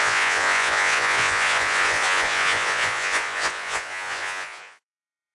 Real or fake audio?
fake